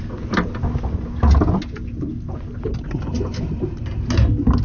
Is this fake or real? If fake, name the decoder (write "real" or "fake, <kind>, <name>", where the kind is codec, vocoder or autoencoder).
real